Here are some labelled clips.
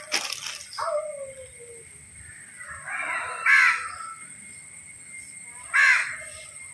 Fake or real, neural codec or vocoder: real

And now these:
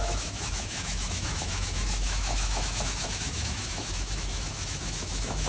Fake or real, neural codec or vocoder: fake, autoencoder, DAC-VAE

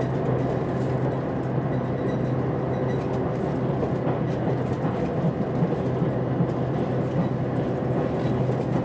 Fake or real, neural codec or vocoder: real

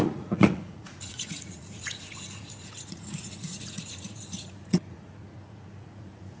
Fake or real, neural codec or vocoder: fake, vocoder, Vocos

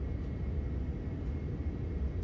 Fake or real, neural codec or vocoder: real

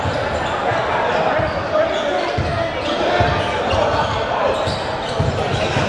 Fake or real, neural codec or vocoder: real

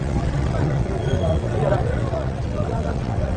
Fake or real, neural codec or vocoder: fake, vocoder, WaveNeXt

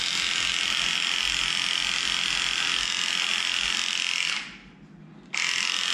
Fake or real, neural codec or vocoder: real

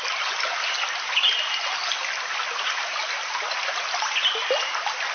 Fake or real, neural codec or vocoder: real